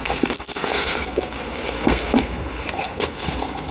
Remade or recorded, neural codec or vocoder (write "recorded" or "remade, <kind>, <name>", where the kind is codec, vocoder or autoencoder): remade, codec, SNAC